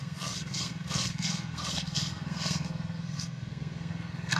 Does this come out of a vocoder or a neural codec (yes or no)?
yes